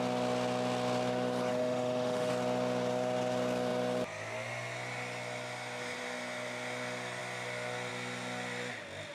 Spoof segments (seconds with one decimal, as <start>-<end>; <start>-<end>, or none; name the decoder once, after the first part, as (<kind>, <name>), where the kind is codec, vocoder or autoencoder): 1.5-2.3 (autoencoder, DAC-VAE)